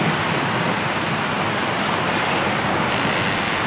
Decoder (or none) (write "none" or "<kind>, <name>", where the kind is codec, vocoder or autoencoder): none